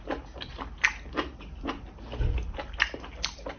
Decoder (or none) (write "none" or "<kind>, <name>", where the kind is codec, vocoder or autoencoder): none